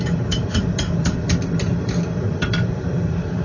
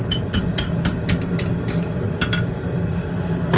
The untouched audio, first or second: second